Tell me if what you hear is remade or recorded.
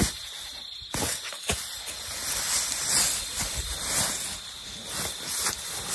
recorded